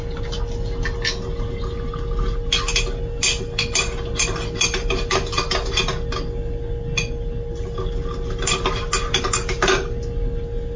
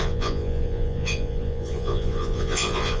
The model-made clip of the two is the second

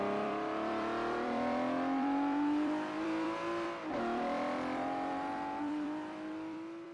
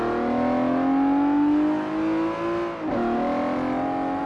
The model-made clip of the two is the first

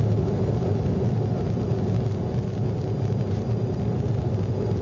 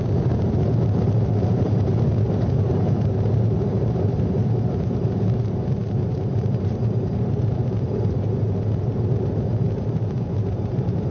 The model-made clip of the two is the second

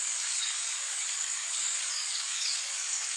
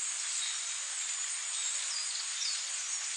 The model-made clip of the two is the first